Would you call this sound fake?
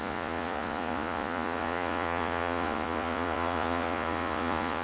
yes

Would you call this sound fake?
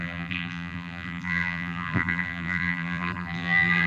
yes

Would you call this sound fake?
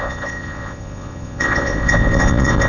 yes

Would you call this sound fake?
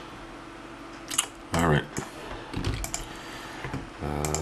no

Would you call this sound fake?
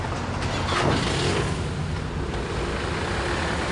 no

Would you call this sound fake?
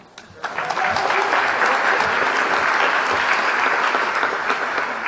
no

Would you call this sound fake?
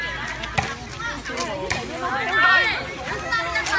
no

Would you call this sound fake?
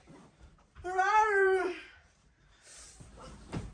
yes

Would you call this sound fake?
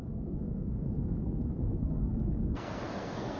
yes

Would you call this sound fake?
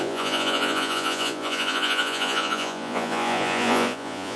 yes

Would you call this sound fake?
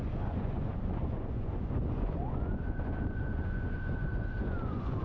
yes